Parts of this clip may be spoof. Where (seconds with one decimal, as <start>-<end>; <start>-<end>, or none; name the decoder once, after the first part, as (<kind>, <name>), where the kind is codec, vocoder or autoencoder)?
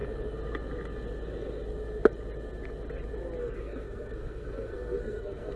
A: 3.4-5.6 (codec, SNAC)